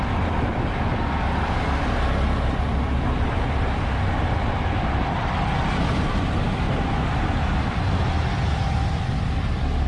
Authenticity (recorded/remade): remade